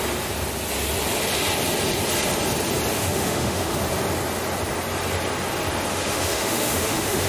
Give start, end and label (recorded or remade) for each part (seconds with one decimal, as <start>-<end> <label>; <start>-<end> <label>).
0.0-2.9 recorded; 2.9-3.8 remade; 3.8-5.9 recorded; 5.9-7.3 remade